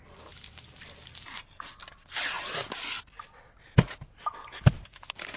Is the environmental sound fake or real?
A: real